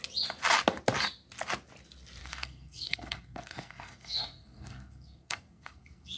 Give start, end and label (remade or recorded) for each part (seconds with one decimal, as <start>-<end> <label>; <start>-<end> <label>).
0.0-2.2 recorded; 2.2-6.2 remade